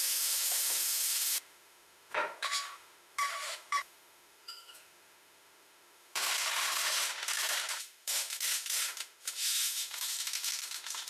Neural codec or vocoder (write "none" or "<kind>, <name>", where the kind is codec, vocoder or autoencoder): autoencoder, DAC-VAE